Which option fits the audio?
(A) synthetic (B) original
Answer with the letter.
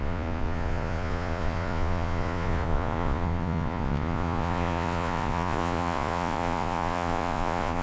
A